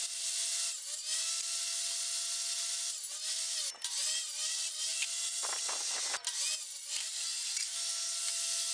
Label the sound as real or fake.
real